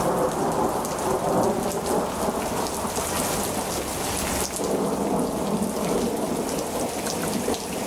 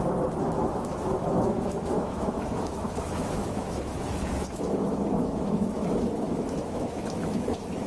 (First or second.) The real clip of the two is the first